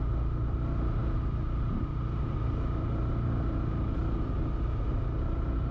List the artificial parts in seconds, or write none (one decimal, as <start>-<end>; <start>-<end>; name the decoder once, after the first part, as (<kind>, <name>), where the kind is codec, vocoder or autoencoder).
none